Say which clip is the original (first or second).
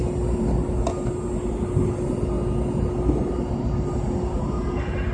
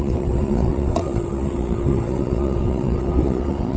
first